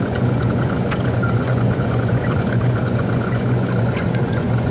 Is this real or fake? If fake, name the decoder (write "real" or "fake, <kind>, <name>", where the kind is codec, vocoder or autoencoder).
fake, vocoder, Vocos